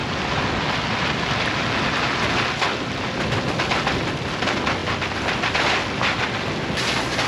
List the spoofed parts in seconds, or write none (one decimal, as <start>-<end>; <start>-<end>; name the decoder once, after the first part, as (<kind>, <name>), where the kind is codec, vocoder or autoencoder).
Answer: none